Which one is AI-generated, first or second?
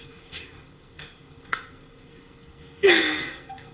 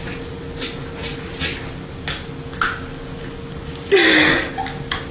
first